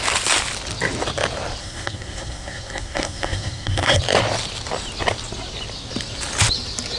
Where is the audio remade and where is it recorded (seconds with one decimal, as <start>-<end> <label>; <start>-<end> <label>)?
0.0-1.6 recorded; 1.6-4.0 remade; 4.0-7.0 recorded